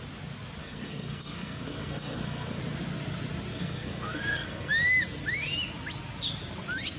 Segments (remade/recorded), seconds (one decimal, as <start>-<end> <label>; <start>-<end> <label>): 0.0-0.6 recorded; 0.6-2.6 remade; 2.6-3.5 recorded; 3.5-4.7 remade; 4.7-7.0 recorded